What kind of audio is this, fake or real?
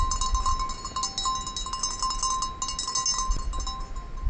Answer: real